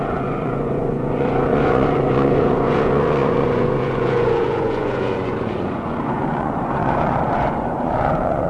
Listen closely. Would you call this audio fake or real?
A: fake